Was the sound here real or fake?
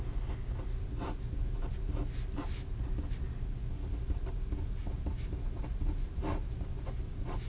real